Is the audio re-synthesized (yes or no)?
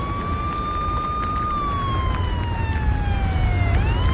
no